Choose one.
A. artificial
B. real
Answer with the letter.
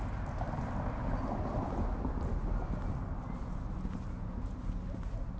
B